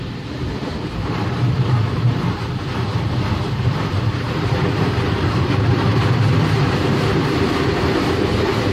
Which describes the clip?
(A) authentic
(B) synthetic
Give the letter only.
B